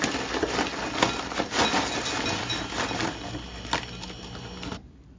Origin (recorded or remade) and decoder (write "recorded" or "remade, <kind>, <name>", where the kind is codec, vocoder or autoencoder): recorded